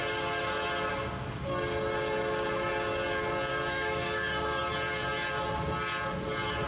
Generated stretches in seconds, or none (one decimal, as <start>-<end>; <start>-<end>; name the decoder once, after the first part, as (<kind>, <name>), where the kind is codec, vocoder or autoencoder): 3.5-4.7 (codec, DAC)